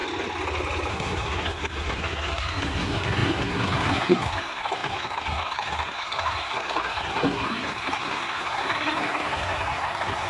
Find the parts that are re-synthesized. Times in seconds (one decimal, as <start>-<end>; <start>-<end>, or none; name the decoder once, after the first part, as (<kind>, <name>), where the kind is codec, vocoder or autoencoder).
0.9-10.3 (codec, SNAC)